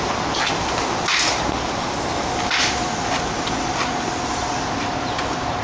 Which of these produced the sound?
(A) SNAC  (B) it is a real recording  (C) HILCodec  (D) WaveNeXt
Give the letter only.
B